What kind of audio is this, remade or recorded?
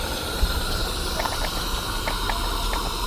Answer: recorded